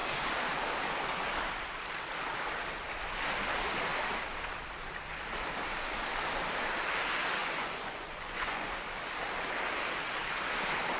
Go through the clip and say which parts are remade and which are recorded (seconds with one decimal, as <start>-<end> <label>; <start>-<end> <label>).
0.0-7.4 recorded; 7.4-8.7 remade; 8.7-11.0 recorded